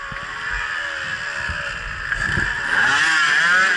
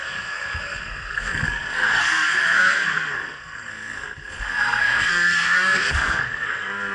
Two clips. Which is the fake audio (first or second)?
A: second